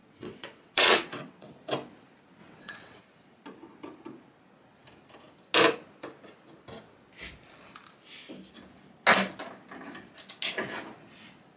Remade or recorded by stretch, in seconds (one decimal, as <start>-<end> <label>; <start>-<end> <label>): 0.0-1.5 remade; 1.5-2.4 recorded; 2.4-3.0 remade; 3.0-11.6 recorded